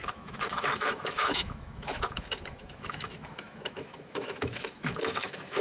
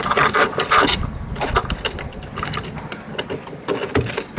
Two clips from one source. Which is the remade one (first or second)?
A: first